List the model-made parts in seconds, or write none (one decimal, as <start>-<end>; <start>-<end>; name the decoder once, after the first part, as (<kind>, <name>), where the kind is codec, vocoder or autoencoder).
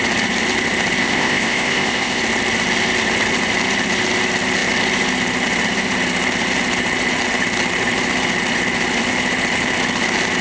1.0-2.2 (codec, ZipCodec)